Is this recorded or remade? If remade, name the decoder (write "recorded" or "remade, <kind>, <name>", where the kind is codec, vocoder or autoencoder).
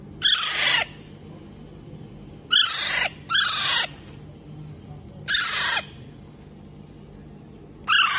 recorded